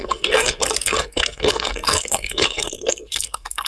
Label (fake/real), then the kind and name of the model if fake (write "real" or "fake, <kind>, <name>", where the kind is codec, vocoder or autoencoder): fake, codec, SNAC